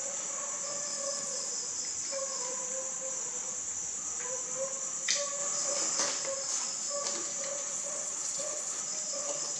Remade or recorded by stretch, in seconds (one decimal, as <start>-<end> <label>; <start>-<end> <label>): 0.0-0.9 recorded; 0.9-1.5 remade; 1.5-7.7 recorded; 7.7-8.8 remade; 8.8-9.6 recorded